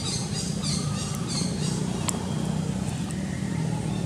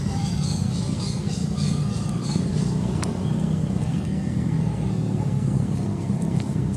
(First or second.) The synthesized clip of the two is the second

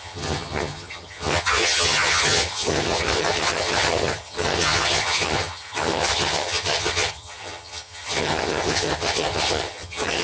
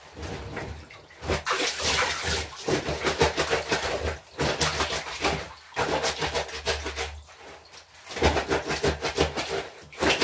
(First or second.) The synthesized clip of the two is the first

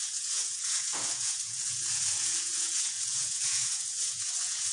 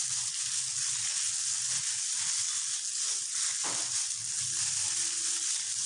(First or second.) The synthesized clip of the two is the first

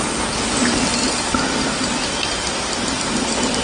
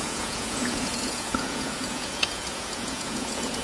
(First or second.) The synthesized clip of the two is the second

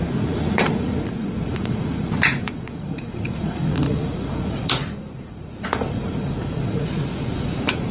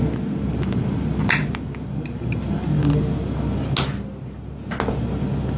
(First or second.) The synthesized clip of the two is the first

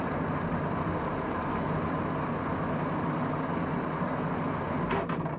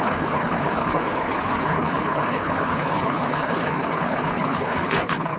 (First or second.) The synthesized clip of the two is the second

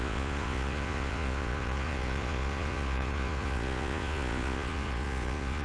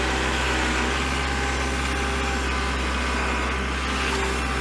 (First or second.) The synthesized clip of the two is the first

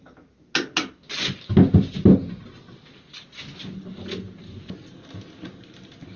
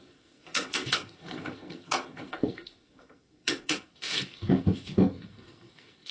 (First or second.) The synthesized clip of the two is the second